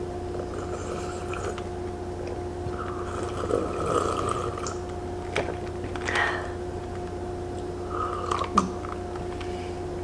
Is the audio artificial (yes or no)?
no